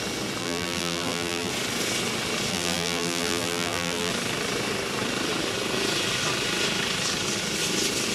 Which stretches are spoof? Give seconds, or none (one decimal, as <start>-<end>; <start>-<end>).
0.4-1.5; 2.5-4.1